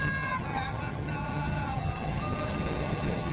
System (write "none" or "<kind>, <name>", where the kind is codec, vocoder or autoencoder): vocoder, HiFi-GAN